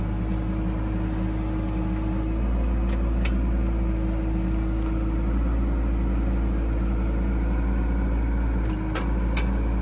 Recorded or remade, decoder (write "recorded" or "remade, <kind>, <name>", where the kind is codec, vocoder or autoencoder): recorded